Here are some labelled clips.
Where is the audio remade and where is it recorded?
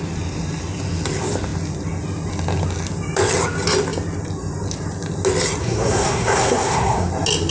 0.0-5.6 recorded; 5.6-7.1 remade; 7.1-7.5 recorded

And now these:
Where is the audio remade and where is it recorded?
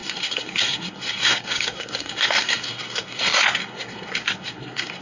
0.0-5.0 remade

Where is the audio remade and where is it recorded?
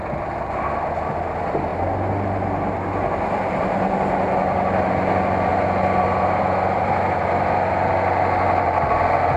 0.0-9.4 recorded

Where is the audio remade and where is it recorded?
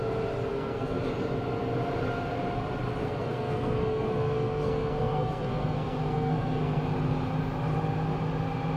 0.0-0.5 recorded; 0.5-1.0 remade; 1.0-3.0 recorded; 3.0-6.8 remade; 6.8-8.8 recorded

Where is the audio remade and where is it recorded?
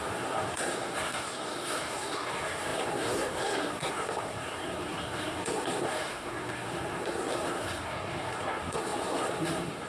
0.0-9.9 remade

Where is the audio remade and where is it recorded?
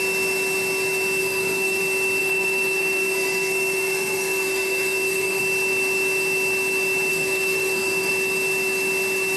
0.0-1.2 recorded; 1.2-1.8 remade; 1.8-2.2 recorded; 2.2-5.4 remade; 5.4-7.1 recorded; 7.1-8.1 remade; 8.1-9.4 recorded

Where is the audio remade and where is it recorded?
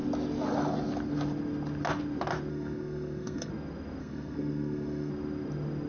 0.0-2.5 recorded; 2.5-3.5 remade; 3.5-4.0 recorded; 4.0-5.1 remade; 5.1-5.9 recorded